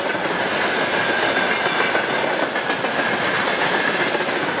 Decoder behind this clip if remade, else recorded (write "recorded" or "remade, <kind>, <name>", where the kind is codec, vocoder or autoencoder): recorded